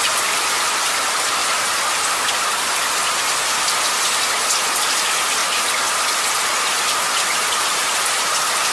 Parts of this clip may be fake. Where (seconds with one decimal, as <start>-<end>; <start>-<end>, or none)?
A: 0.0-5.4; 6.3-8.7